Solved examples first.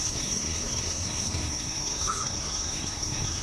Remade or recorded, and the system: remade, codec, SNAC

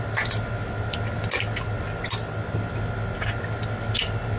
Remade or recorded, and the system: recorded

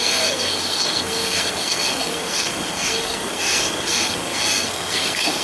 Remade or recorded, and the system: remade, codec, SNAC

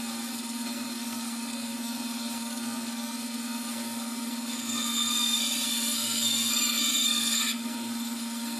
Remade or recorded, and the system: remade, codec, SNAC